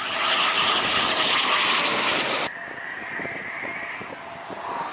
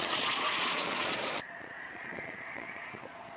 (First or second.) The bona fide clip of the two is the first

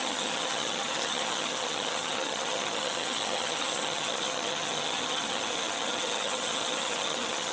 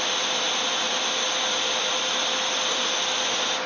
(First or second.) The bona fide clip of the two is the second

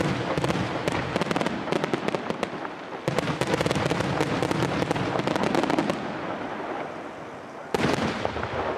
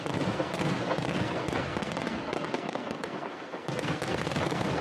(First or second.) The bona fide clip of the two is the first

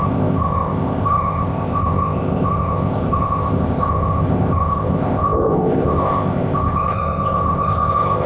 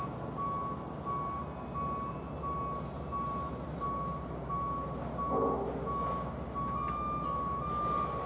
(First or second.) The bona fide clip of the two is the second